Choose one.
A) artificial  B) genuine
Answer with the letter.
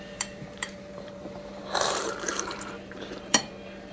A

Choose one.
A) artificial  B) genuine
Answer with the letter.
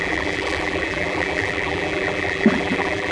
A